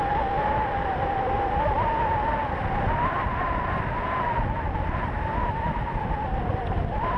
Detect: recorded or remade recorded